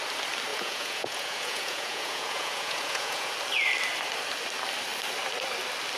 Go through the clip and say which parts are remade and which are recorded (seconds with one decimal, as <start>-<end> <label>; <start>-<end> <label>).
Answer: 0.0-0.5 recorded; 0.5-3.3 remade; 3.3-6.0 recorded